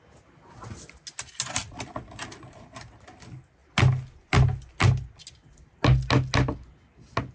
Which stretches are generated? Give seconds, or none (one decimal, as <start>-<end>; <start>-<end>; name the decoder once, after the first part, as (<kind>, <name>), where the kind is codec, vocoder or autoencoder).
none